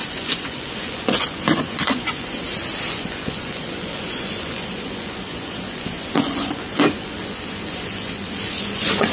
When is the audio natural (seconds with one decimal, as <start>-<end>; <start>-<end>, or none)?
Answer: 2.4-2.9